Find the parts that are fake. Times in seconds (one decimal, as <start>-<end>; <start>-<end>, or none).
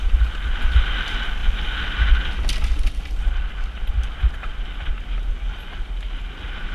none